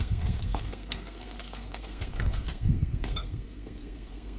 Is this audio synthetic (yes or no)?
yes